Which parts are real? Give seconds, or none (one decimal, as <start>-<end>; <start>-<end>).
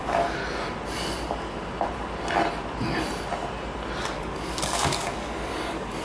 0.4-4.0